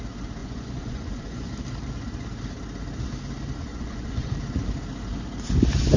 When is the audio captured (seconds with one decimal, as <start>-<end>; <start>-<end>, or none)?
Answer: 0.0-0.4; 1.5-3.7; 4.3-6.0